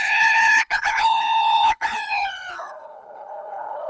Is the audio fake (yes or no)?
yes